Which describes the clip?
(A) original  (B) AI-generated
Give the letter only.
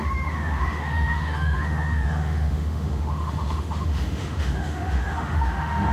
B